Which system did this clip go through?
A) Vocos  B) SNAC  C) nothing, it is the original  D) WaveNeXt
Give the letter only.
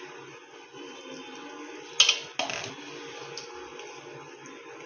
C